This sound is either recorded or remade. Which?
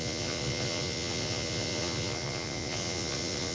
remade